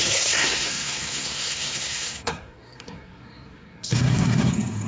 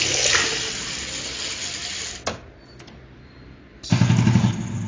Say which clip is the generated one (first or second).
first